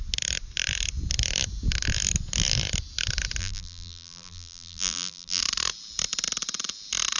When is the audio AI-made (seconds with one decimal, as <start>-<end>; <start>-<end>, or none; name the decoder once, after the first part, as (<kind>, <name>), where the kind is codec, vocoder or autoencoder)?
3.4-5.4 (vocoder, BigVGAN v2)